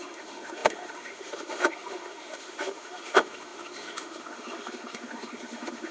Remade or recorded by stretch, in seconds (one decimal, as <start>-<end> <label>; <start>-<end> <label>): 0.0-5.9 remade